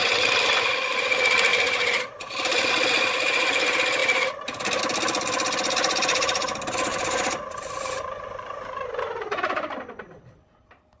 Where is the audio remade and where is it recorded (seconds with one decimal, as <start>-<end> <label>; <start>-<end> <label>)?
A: 0.0-1.5 recorded; 1.5-2.6 remade; 2.6-4.0 recorded; 4.0-4.8 remade; 4.8-6.9 recorded; 6.9-9.0 remade; 9.0-11.0 recorded